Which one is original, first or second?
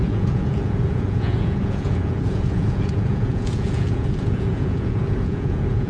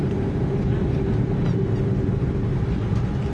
second